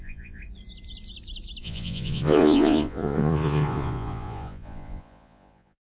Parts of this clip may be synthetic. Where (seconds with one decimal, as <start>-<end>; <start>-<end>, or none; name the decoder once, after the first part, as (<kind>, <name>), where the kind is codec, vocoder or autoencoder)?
0.0-0.4 (vocoder, Vocos); 1.6-5.8